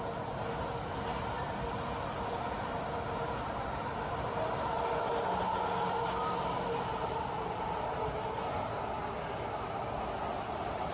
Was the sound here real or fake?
real